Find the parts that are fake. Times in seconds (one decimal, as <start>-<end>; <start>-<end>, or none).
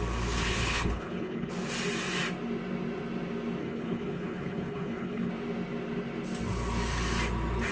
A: 0.4-1.5; 3.6-5.3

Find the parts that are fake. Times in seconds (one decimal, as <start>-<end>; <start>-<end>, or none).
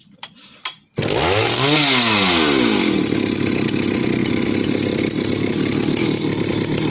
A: none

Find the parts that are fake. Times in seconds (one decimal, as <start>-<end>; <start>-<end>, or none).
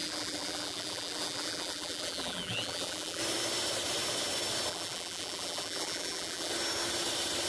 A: 0.0-3.2; 4.7-6.5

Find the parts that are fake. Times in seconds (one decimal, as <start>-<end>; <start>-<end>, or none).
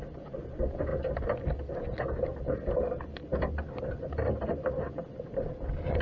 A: none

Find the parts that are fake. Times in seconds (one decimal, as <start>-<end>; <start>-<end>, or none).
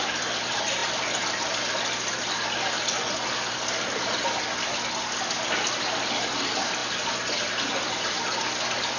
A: none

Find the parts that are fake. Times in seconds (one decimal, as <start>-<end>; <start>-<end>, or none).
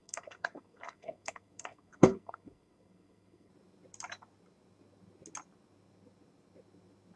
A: 0.0-3.5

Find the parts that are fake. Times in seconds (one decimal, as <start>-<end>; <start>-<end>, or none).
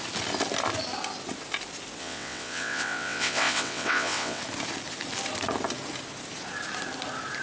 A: 2.0-4.4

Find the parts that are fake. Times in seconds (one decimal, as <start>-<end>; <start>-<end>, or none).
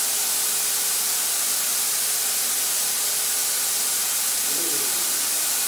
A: none